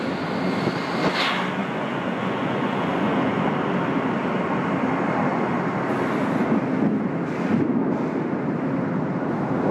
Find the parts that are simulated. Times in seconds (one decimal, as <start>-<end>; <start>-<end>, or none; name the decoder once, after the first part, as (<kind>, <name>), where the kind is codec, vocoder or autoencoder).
1.6-3.4 (vocoder, Vocos)